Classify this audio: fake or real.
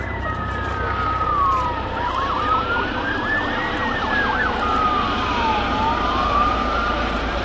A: fake